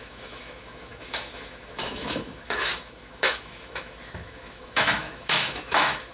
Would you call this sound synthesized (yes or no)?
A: yes